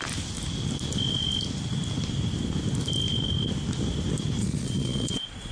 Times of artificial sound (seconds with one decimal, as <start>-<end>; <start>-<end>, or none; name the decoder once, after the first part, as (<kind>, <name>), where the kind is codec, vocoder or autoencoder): 4.4-5.5 (vocoder, Vocos)